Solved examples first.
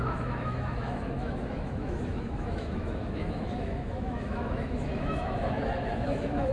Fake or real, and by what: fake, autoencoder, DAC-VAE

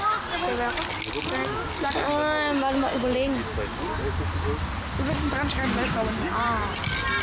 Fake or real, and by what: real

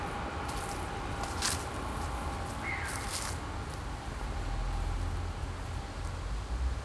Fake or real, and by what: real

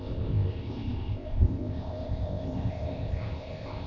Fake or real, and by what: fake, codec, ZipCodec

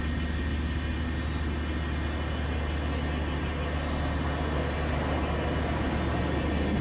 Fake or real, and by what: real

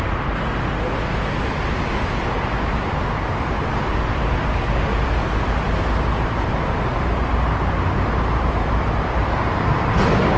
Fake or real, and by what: real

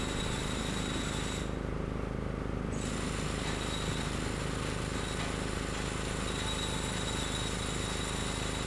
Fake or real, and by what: real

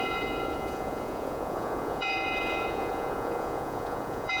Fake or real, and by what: fake, vocoder, Vocos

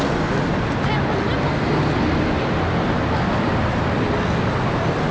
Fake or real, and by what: real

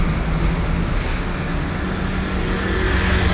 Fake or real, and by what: real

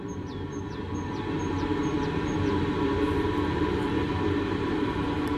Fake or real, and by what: fake, vocoder, BigVGAN v2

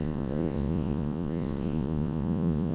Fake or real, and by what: fake, vocoder, Vocos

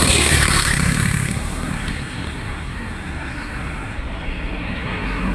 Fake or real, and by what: fake, codec, SNAC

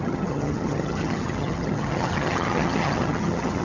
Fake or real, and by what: fake, vocoder, HiFi-GAN